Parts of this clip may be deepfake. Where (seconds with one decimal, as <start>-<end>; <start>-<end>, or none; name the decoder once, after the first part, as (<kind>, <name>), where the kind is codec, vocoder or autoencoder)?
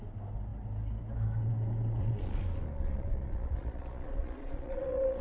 2.0-5.2 (vocoder, Vocos)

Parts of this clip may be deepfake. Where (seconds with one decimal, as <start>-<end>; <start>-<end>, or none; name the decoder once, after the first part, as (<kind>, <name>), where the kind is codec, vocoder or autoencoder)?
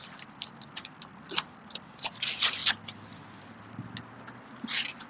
none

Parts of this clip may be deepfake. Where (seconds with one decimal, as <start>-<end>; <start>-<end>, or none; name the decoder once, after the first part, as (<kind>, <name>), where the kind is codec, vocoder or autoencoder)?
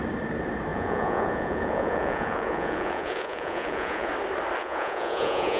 0.7-4.1 (vocoder, Vocos); 4.6-5.6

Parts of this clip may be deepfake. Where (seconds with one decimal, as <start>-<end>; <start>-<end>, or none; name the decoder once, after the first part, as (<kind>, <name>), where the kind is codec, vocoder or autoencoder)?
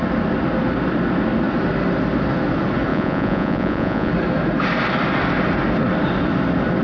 2.9-4.1 (vocoder, Vocos)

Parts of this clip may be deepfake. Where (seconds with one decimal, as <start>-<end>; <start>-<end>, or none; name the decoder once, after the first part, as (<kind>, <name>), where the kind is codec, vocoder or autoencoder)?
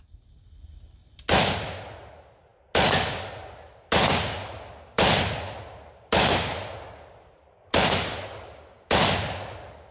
none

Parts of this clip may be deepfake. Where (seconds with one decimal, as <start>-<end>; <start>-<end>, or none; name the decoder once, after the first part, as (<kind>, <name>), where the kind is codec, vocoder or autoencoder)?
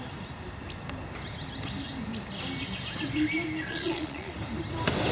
3.7-4.3 (vocoder, Vocos)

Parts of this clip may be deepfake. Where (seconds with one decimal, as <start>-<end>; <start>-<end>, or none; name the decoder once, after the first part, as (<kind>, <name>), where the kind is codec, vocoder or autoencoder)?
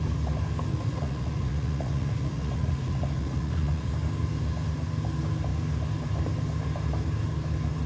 0.7-3.9 (vocoder, Vocos)